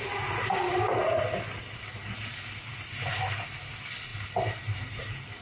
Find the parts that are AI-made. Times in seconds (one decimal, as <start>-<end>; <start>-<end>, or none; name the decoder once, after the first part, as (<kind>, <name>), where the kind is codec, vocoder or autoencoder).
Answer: none